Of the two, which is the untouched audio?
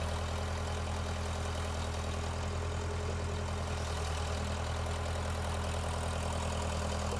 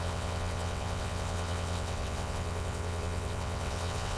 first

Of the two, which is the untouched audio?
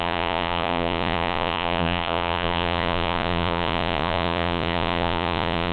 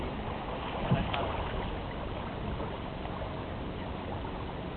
second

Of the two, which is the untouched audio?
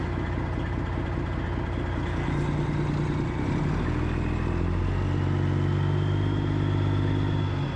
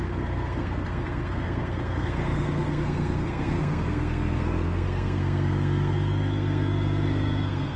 first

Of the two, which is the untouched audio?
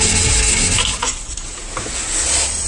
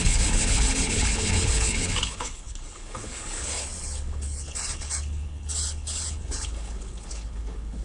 first